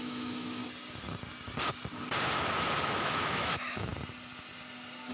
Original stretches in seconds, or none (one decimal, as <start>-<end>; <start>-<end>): 0.6-3.0; 3.9-5.1